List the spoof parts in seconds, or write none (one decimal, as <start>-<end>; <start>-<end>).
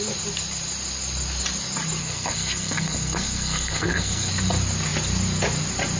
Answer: 2.0-4.3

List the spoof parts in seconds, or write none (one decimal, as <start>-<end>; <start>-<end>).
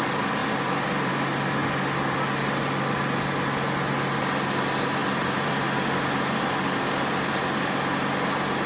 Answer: 0.4-1.1; 5.0-5.5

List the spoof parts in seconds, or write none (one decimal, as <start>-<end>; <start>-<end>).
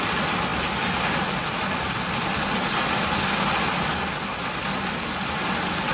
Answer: none